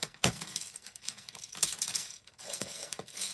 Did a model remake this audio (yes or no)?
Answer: yes